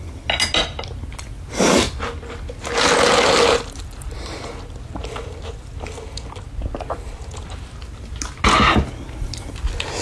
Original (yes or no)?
yes